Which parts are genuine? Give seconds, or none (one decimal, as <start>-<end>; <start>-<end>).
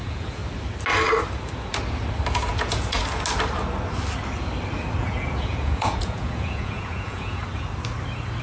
0.4-2.3; 3.0-5.0; 7.4-8.4